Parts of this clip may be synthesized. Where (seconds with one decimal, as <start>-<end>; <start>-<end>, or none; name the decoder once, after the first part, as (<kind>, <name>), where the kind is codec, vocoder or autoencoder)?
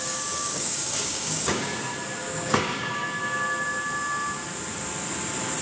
0.0-1.7 (codec, DAC); 2.2-3.1